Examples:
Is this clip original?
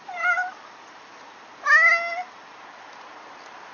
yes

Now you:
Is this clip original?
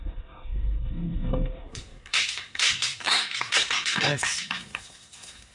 no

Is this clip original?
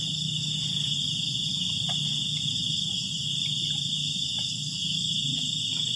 yes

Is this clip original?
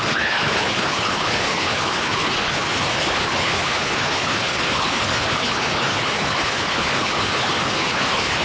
no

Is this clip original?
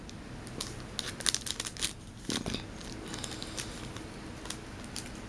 yes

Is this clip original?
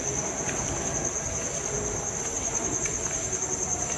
yes